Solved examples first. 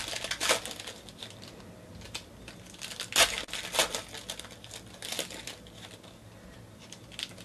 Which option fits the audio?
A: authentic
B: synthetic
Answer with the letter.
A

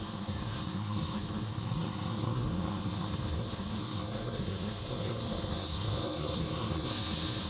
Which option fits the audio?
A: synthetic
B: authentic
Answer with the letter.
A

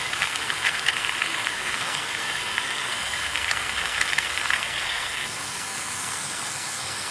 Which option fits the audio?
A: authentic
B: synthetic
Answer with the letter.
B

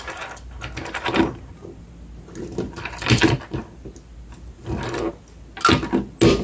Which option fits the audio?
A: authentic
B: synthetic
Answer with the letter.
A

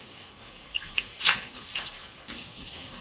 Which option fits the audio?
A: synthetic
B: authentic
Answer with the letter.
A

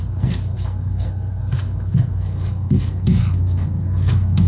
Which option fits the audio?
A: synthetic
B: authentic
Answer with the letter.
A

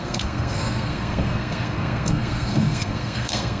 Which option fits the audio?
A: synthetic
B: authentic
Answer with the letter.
A